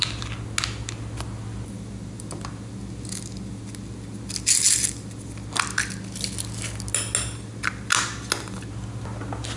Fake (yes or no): no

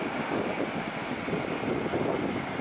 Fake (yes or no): no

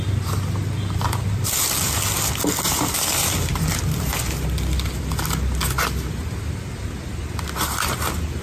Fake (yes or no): no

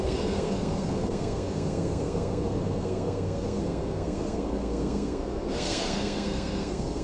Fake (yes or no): yes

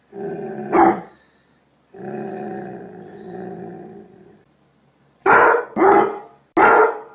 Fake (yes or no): no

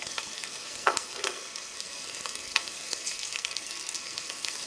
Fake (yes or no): yes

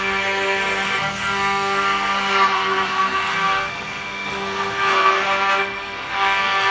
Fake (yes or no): yes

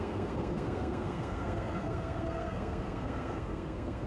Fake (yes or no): yes